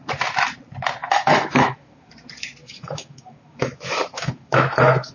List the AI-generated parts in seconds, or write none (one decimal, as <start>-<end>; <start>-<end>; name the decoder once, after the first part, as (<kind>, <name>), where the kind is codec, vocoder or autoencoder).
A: 1.0-2.1 (autoencoder, DAC-VAE); 2.6-5.1